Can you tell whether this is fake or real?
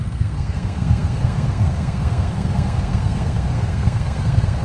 fake